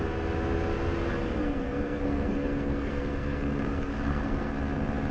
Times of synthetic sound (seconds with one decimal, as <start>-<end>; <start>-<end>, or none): 1.4-4.5